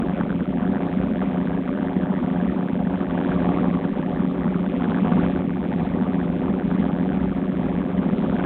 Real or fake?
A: fake